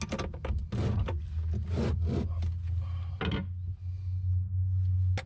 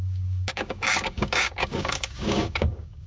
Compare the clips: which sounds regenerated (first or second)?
second